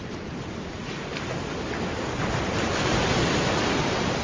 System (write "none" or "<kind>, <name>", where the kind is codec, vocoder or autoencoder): none